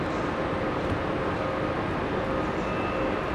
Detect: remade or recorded recorded